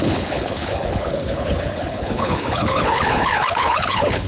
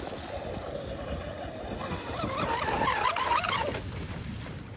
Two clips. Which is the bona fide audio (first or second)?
second